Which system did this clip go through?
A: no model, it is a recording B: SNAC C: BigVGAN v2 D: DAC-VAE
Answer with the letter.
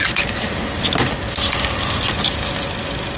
A